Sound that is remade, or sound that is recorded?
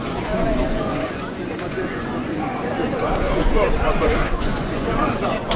remade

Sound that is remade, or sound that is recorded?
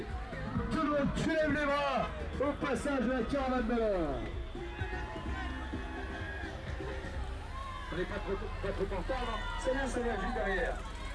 recorded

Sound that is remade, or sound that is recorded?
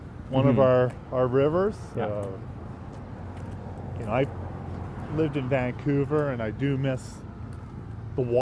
recorded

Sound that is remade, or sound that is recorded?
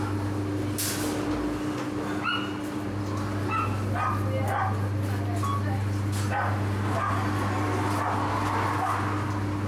recorded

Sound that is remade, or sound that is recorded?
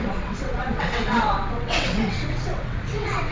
remade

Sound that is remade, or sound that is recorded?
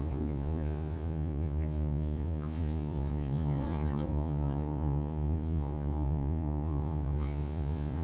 remade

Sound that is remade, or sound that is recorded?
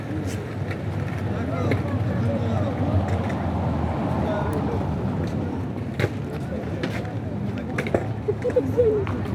recorded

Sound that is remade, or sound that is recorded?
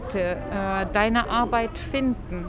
recorded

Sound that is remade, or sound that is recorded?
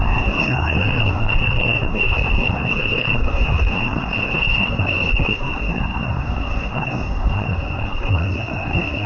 remade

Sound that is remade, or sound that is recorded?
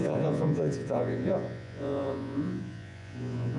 remade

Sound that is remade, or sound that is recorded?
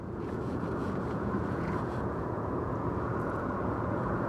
remade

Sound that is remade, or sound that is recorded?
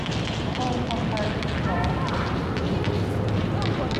recorded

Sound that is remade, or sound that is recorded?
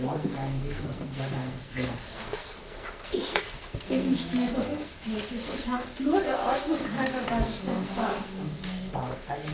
remade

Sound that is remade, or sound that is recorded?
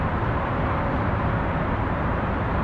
remade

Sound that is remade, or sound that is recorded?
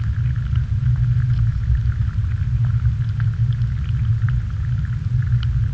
recorded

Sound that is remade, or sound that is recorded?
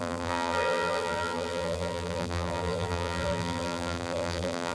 remade